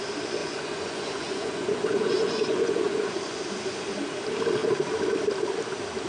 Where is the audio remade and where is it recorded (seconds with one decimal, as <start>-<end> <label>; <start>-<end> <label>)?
0.0-0.4 recorded; 0.4-3.4 remade; 3.4-6.1 recorded